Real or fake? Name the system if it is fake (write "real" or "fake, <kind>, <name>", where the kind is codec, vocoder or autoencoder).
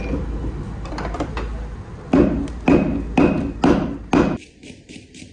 real